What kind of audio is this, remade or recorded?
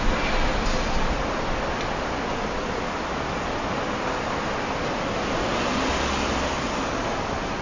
recorded